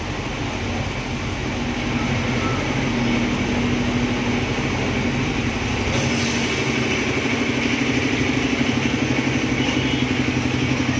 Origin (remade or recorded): recorded